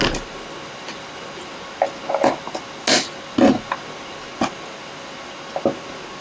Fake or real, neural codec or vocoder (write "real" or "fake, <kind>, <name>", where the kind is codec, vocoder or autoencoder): real